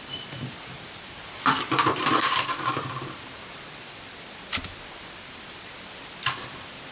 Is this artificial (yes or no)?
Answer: yes